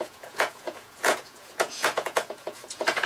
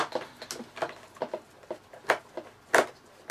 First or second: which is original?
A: second